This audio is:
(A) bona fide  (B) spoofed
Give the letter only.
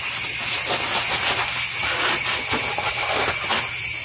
A